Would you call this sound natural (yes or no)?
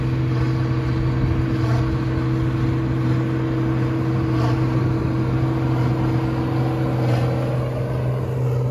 yes